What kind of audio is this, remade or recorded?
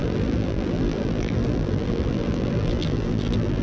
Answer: remade